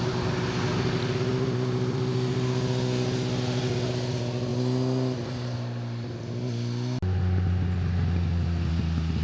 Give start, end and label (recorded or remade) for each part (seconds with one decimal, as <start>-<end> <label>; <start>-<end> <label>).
0.0-1.3 recorded; 1.3-2.3 remade; 2.3-9.2 recorded